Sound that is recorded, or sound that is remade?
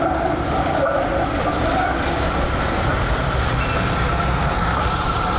recorded